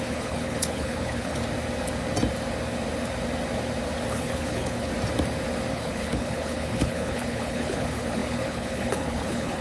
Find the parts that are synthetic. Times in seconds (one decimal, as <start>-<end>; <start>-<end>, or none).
0.0-1.4; 4.1-4.9; 5.7-9.6